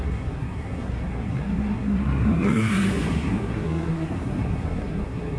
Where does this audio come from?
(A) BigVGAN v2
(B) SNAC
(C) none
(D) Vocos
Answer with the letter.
B